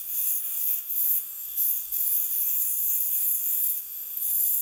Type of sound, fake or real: fake